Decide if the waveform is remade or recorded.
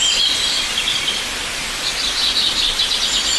recorded